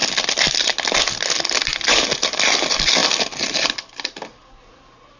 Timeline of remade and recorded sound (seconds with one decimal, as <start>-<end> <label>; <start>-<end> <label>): 0.0-5.2 recorded